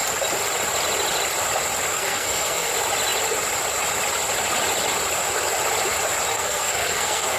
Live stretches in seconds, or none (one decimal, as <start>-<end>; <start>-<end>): 0.0-1.9; 2.7-6.3